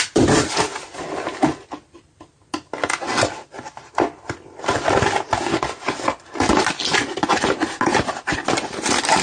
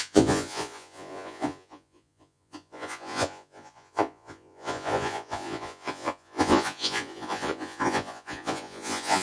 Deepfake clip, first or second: second